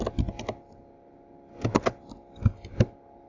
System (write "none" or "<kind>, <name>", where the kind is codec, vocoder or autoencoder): none